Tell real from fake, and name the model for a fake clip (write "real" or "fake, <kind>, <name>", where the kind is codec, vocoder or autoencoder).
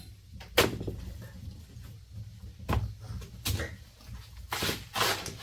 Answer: real